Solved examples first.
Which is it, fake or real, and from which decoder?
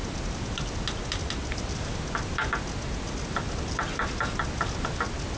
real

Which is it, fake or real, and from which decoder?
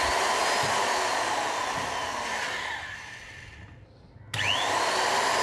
real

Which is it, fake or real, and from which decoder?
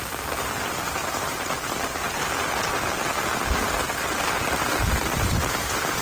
real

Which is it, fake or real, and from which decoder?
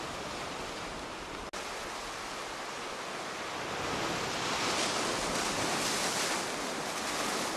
real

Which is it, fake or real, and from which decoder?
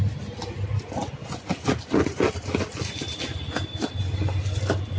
real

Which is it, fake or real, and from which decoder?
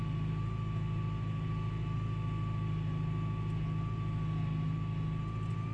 real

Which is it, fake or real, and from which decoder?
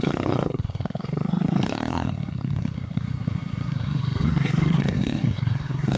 fake, codec, SNAC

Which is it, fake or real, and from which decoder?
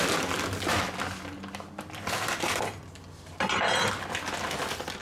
real